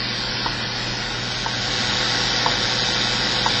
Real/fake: real